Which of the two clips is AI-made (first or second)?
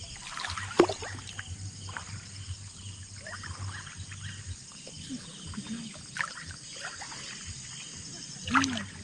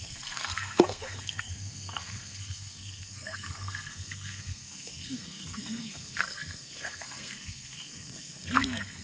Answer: second